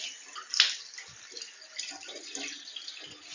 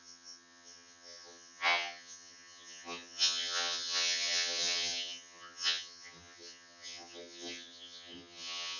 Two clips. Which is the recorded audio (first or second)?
first